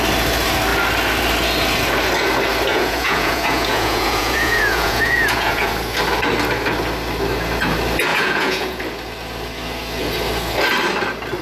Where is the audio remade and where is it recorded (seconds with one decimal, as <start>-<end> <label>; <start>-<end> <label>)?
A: 0.0-2.7 recorded; 2.7-5.7 remade; 5.7-8.1 recorded; 8.1-8.8 remade; 8.8-11.4 recorded